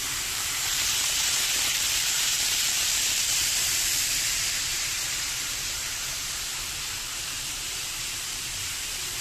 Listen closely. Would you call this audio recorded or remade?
remade